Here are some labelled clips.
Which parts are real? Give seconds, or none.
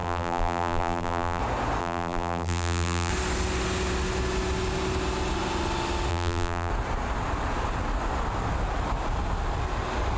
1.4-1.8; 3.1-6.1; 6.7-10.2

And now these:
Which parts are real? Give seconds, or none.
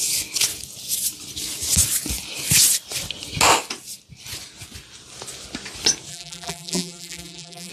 0.0-6.1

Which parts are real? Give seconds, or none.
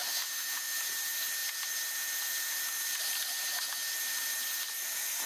0.8-5.3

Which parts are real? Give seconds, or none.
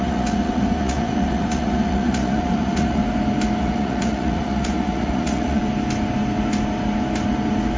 3.0-3.6; 5.6-7.8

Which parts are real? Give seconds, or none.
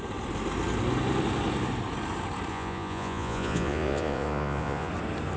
0.0-2.5; 4.9-5.4